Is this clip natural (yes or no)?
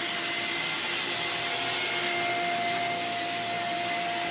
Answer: yes